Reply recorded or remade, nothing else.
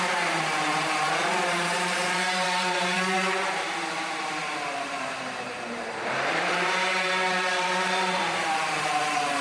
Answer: remade